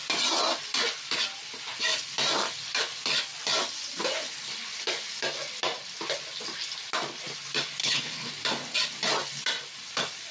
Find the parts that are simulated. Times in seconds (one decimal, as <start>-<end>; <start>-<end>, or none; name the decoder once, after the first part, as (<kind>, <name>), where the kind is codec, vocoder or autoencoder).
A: 7.8-8.3 (codec, HILCodec)